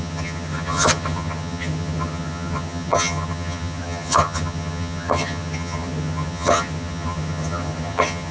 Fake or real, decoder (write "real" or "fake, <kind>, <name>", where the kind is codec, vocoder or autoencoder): fake, vocoder, HiFi-GAN